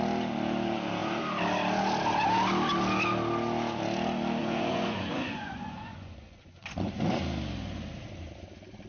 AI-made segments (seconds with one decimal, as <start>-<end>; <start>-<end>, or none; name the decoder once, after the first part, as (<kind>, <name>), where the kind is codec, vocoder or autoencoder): 4.4-6.9 (vocoder, Vocos)